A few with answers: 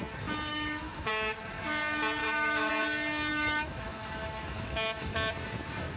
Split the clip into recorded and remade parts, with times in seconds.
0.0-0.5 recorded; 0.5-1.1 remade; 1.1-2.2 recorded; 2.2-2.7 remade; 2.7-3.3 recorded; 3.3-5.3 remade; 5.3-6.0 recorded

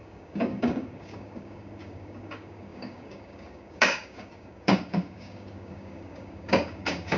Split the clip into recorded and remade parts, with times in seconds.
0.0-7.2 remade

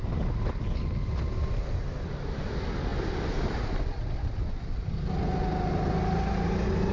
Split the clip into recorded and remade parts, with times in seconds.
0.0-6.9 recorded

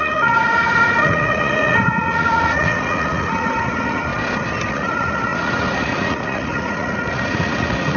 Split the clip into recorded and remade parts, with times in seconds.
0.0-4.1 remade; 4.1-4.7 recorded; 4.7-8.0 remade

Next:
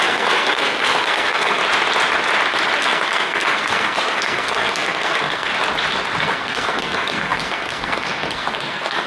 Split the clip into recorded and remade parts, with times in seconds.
0.0-1.6 remade; 1.6-2.8 recorded; 2.8-5.5 remade; 5.5-6.2 recorded; 6.2-9.1 remade

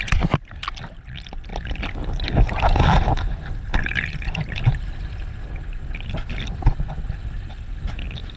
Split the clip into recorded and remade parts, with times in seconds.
0.0-3.7 remade; 3.7-8.4 recorded

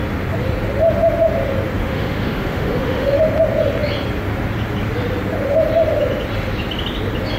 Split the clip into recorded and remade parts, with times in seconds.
0.0-1.8 recorded; 1.8-3.2 remade; 3.2-7.4 recorded